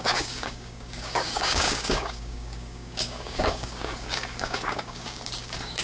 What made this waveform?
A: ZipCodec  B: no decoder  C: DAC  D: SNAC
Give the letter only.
C